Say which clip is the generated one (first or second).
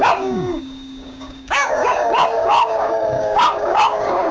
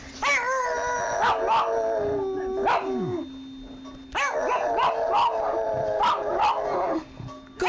first